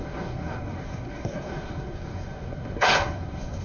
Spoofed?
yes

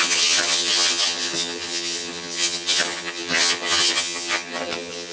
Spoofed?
yes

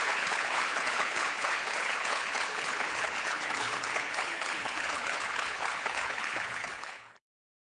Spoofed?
yes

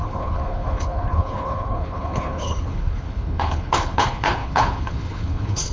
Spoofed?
yes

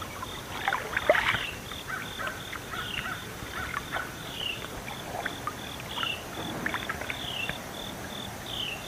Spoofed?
no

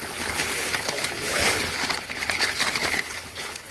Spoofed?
yes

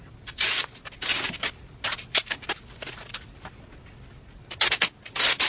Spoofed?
no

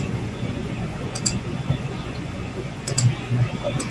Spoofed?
yes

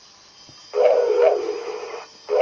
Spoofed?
no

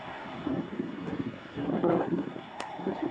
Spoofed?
yes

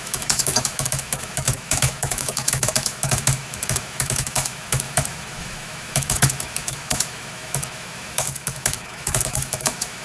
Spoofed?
yes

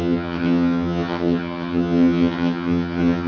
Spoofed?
yes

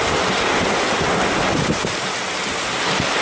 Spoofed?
no